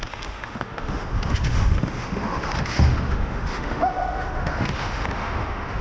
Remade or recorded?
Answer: remade